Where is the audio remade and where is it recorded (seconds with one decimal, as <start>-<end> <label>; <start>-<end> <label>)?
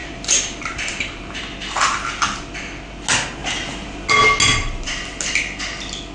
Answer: 0.0-1.4 remade; 1.4-6.1 recorded